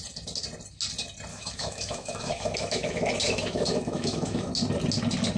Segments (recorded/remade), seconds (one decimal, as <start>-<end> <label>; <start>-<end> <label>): 0.0-1.3 recorded; 1.3-4.5 remade; 4.5-5.4 recorded